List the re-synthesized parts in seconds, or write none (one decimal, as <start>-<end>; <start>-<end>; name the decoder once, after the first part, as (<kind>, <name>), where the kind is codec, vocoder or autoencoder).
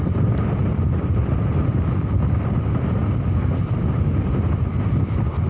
none